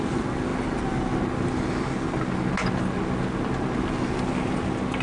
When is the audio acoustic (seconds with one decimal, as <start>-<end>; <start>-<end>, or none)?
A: 0.0-5.0